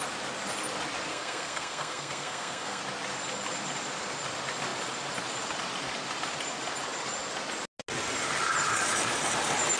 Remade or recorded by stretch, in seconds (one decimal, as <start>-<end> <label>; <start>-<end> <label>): 0.0-1.1 recorded; 1.1-2.8 remade; 2.8-9.8 recorded